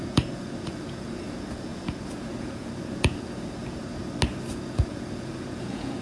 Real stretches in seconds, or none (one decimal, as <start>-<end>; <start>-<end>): 3.8-4.5